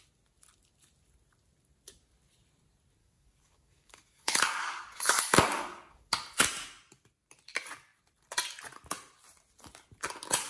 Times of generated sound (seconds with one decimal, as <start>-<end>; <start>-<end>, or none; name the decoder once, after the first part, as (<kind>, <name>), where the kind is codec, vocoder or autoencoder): 3.0-6.1 (codec, DAC)